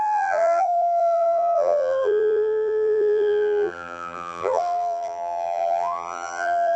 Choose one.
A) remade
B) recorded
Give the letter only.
A